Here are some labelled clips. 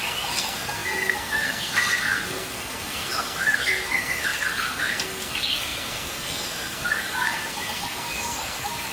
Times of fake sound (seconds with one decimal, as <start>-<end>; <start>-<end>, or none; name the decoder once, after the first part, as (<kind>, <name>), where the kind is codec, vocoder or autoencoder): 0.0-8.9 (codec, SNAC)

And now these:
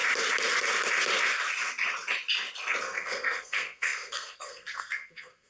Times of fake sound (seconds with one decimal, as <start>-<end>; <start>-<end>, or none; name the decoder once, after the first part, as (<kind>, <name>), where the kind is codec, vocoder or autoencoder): 2.8-5.5 (codec, SNAC)

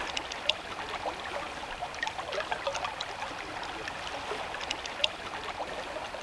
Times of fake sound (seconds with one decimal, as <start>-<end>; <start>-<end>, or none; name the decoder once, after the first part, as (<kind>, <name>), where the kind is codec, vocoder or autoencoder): none

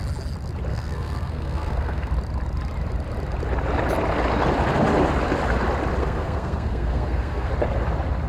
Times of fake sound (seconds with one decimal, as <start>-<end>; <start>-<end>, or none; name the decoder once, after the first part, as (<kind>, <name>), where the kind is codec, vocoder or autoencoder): 0.7-2.1 (codec, SNAC); 6.0-7.5